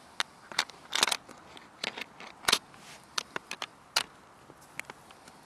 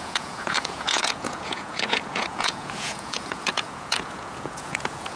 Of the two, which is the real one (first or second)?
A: first